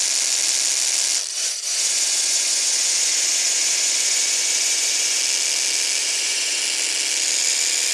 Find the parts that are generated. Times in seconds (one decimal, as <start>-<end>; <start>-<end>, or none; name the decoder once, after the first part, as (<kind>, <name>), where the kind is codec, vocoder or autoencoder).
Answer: 1.3-5.2 (vocoder, Vocos); 6.0-6.6